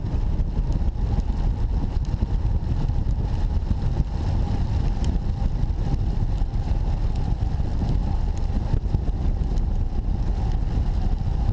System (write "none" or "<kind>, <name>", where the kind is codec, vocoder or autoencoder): none